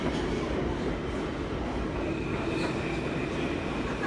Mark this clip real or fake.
real